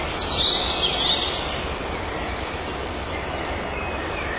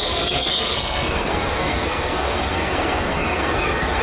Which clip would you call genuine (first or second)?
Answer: first